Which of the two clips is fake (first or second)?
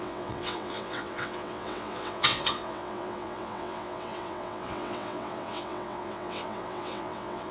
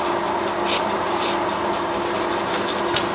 first